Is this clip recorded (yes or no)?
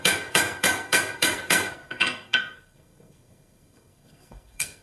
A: no